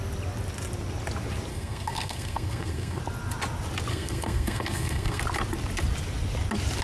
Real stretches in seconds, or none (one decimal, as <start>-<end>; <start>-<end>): 0.0-1.5; 3.0-3.9; 5.2-6.8